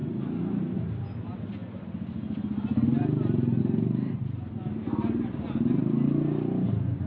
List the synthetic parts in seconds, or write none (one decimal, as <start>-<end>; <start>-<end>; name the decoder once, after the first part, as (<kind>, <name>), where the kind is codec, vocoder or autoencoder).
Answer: none